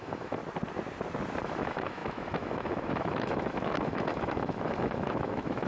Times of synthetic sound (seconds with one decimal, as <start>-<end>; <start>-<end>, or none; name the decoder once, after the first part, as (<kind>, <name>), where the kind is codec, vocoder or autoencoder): 0.0-0.4 (autoencoder, DAC-VAE); 1.4-5.7